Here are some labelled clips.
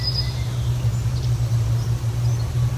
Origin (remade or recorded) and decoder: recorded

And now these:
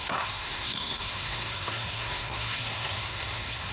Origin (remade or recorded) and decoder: remade, codec, SNAC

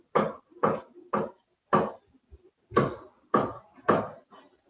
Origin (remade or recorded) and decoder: recorded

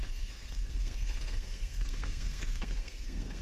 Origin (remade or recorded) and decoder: remade, codec, SNAC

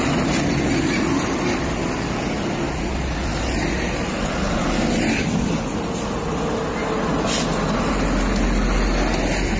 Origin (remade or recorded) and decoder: recorded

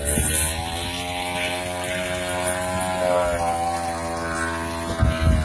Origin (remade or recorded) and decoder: recorded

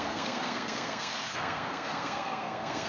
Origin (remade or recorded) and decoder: remade, codec, SNAC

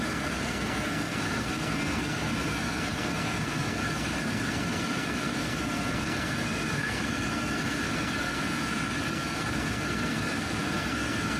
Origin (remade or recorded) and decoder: remade, codec, SNAC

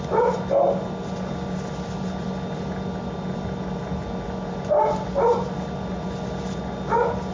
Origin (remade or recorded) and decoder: recorded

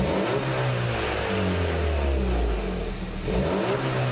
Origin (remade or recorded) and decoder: recorded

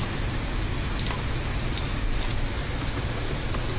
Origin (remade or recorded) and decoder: recorded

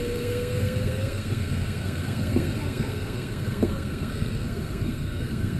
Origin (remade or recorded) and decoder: remade, codec, SNAC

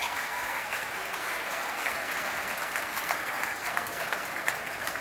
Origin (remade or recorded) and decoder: remade, codec, SNAC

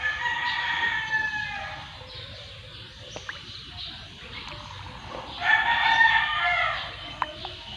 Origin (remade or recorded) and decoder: recorded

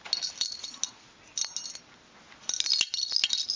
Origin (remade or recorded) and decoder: recorded